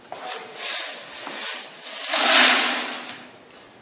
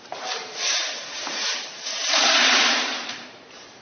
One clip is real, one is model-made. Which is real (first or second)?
first